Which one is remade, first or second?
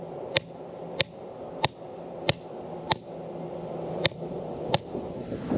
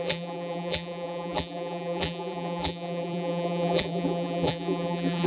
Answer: second